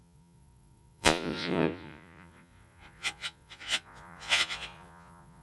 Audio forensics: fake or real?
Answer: fake